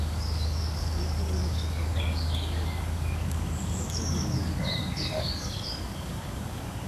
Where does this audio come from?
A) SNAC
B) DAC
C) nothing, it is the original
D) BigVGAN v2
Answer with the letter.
B